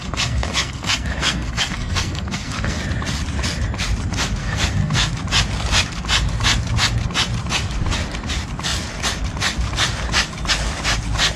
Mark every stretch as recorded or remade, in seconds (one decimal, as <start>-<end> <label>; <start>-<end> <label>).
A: 0.0-2.8 remade; 2.8-4.4 recorded; 4.4-5.1 remade; 5.1-11.4 recorded